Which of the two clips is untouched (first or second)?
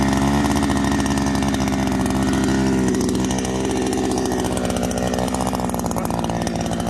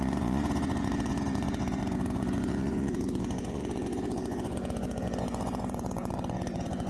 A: first